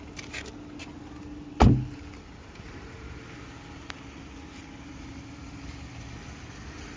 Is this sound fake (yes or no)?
no